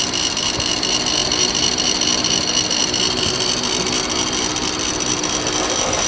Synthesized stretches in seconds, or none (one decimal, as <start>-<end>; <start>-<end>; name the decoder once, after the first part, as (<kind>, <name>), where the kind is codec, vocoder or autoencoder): none